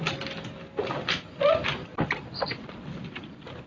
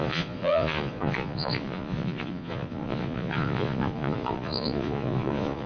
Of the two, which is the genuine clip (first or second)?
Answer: first